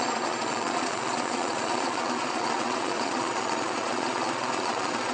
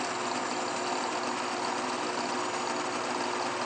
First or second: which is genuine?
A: second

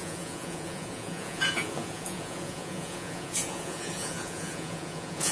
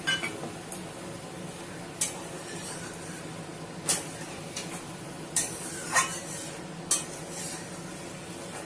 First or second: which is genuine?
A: second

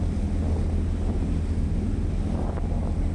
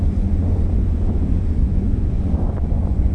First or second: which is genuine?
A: first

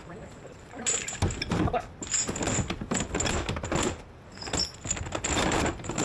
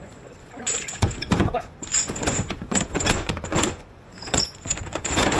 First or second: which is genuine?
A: first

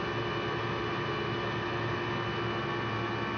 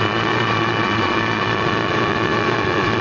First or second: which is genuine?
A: first